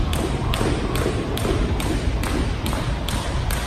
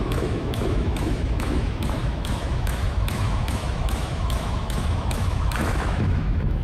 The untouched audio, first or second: first